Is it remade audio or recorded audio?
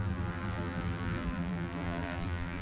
remade